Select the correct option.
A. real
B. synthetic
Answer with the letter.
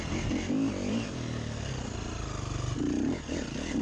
A